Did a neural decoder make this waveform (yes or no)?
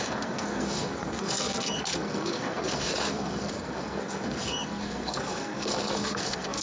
yes